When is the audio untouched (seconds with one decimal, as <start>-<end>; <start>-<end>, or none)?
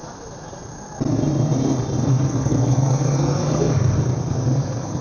0.0-2.1